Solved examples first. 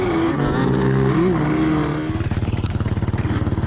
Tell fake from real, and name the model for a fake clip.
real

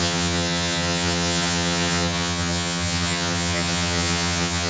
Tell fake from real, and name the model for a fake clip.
fake, vocoder, HiFi-GAN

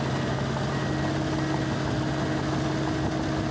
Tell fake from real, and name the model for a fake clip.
real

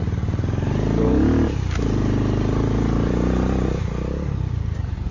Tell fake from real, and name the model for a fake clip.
real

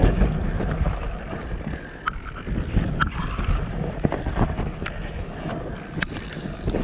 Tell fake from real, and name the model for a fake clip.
real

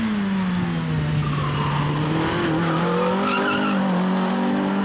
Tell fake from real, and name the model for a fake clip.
real